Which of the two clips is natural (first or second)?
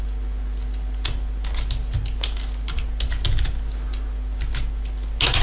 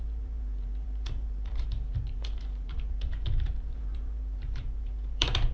first